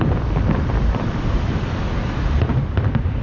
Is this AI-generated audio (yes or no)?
no